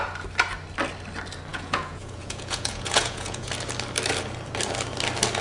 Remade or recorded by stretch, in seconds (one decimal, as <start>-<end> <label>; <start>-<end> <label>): 0.0-1.5 recorded; 1.5-3.5 remade; 3.5-5.4 recorded